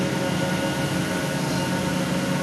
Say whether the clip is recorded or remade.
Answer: recorded